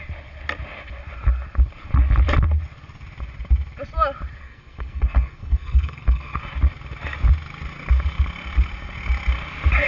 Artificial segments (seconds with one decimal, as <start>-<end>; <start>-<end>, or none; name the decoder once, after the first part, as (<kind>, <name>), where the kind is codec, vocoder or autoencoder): 4.4-6.4 (codec, SNAC)